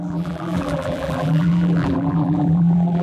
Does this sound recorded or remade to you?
remade